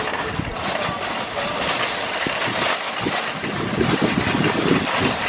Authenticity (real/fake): real